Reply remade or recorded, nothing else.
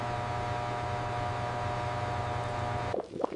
recorded